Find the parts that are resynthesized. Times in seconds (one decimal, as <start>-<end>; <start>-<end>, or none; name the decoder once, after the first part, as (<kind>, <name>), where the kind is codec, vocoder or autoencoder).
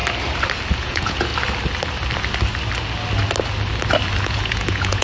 0.8-1.3 (vocoder, Vocos); 4.2-5.0